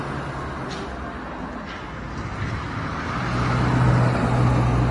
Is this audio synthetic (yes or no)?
no